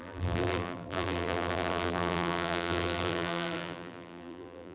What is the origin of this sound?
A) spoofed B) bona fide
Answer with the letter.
A